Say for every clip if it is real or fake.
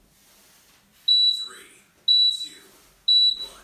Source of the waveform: real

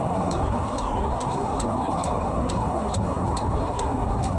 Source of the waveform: fake